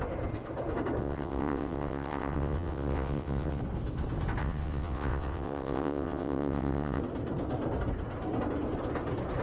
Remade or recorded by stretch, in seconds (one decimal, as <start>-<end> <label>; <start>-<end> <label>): 0.0-1.0 recorded; 1.0-3.6 remade; 3.6-4.4 recorded; 4.4-7.0 remade; 7.0-9.4 recorded